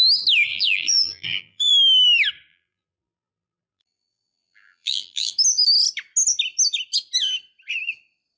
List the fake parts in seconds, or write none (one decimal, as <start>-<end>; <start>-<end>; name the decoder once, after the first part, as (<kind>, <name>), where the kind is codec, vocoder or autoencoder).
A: 0.5-1.7 (vocoder, BigVGAN v2); 2.5-5.3